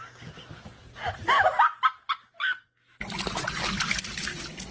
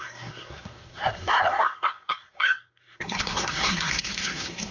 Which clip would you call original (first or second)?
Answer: first